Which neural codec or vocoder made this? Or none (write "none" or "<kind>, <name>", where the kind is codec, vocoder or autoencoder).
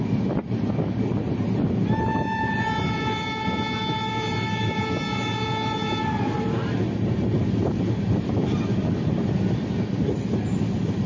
none